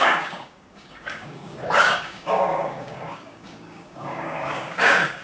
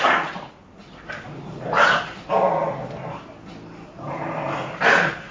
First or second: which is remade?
first